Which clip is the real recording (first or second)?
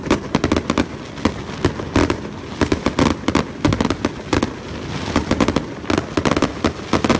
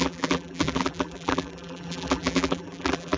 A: first